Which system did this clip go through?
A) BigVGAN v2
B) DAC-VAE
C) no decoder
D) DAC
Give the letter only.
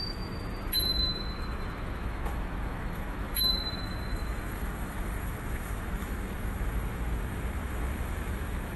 B